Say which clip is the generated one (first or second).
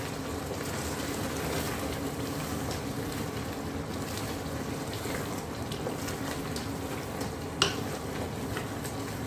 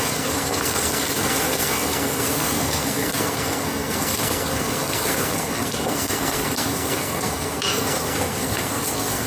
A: second